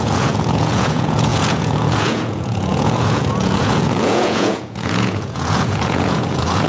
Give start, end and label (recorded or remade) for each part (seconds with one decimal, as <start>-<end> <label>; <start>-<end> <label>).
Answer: 0.0-6.7 remade